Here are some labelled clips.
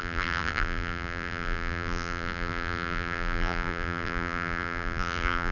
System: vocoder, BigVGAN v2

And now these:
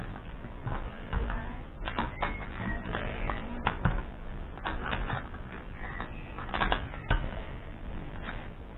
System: vocoder, BigVGAN v2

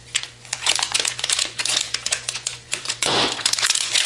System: vocoder, Vocos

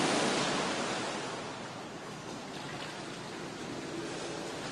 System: none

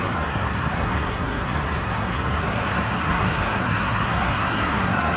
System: codec, SNAC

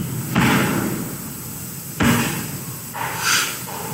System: none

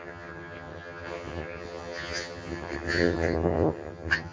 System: vocoder, HiFi-GAN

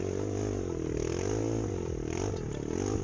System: none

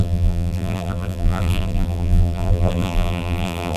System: vocoder, BigVGAN v2